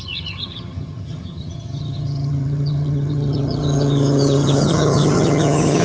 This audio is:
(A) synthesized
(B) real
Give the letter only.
A